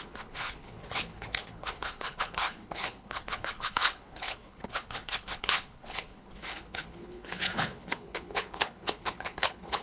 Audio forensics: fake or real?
fake